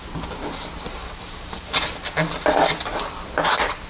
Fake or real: real